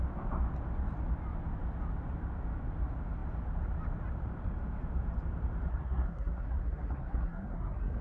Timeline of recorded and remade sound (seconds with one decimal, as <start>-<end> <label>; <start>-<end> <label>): 0.0-5.7 recorded; 5.7-8.0 remade